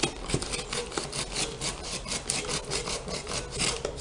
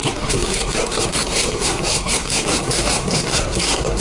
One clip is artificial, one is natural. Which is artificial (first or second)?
second